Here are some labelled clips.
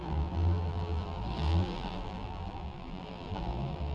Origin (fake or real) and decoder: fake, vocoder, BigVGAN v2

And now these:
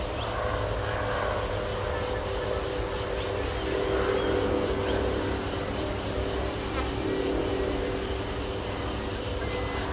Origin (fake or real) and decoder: real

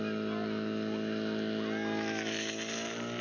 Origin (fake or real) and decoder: real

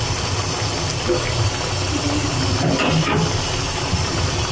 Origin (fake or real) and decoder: real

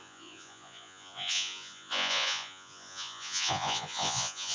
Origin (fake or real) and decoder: fake, vocoder, Vocos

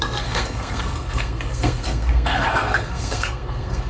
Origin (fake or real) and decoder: fake, codec, SNAC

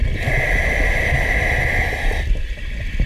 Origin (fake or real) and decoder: real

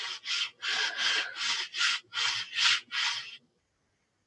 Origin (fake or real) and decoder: real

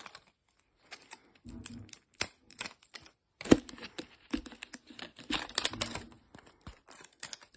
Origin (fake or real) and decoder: real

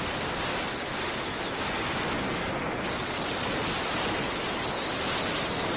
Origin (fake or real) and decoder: real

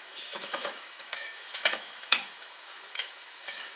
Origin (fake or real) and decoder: fake, autoencoder, DAC-VAE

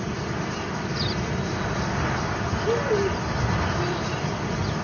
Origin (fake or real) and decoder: real